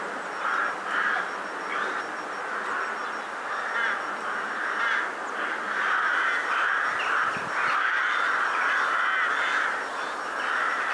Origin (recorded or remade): recorded